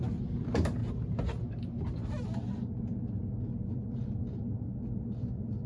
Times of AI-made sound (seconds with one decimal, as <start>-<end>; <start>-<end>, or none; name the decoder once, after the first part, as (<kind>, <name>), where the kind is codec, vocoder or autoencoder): none